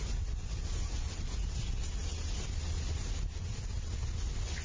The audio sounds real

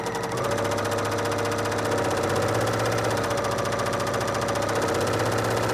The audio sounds real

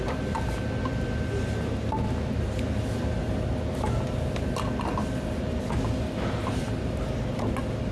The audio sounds real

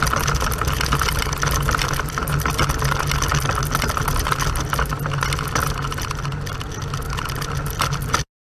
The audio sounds real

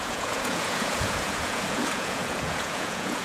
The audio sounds fake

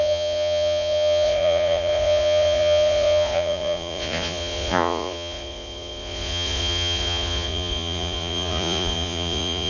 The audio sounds fake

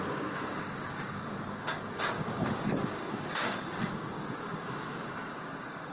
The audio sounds fake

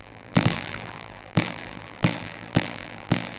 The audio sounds fake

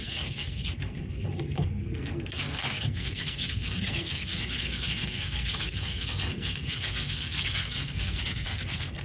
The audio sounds fake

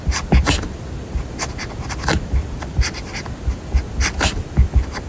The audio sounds real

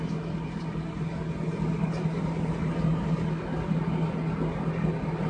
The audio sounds real